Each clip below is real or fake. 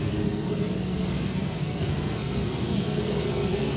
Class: fake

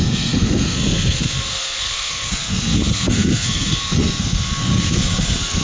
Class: fake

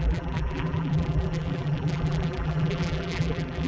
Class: fake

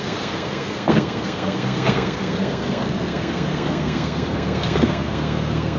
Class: fake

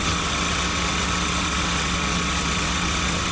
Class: fake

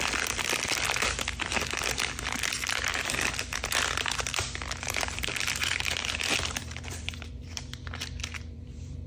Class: fake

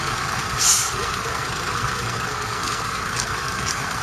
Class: fake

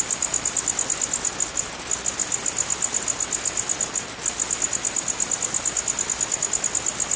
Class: real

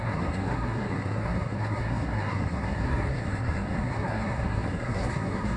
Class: fake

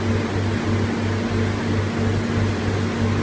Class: real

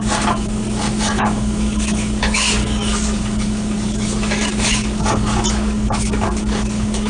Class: fake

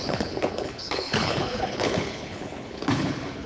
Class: fake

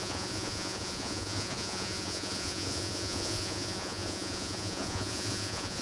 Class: fake